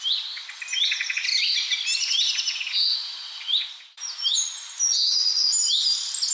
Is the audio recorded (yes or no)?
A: yes